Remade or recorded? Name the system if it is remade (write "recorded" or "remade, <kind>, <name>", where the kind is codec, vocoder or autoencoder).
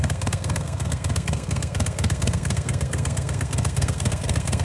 remade, codec, SNAC